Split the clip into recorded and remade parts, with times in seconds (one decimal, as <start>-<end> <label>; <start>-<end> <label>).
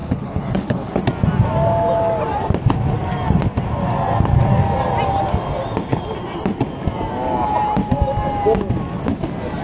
0.0-1.0 remade; 1.0-9.6 recorded